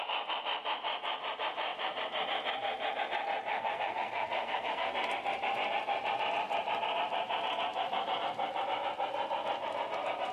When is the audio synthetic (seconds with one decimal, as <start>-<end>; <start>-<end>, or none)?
3.5-4.9